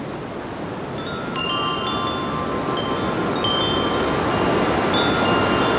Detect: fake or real real